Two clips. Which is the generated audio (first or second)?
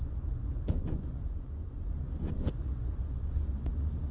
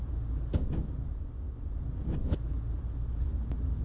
first